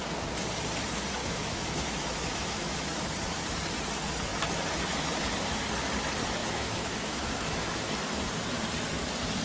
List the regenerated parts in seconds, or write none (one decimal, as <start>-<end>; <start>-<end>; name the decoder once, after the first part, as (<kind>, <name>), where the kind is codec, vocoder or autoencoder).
1.2-3.0 (autoencoder, DAC-VAE); 6.4-7.9